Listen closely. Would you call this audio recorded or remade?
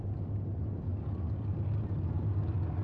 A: recorded